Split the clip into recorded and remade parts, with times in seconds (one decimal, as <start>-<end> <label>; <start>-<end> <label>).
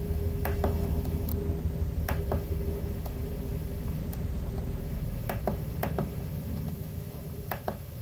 0.0-1.3 remade; 1.3-2.0 recorded; 2.0-4.0 remade; 4.0-4.8 recorded; 4.8-8.0 remade